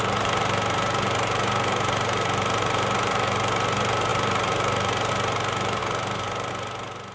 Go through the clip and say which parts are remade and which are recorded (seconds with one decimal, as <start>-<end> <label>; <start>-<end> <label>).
0.0-7.1 remade